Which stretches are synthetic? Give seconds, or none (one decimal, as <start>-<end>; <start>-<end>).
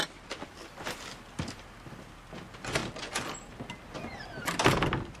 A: none